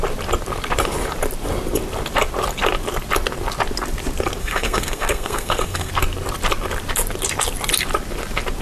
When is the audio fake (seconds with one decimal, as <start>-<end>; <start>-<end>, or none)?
4.4-5.9